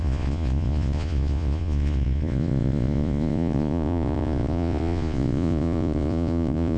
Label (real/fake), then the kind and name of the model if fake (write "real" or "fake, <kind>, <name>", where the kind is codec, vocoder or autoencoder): fake, vocoder, Vocos